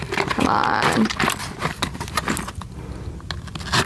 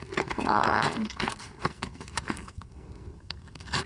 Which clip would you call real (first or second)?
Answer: first